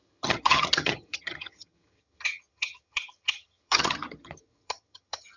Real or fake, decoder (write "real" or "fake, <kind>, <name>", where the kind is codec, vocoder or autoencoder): fake, vocoder, HiFi-GAN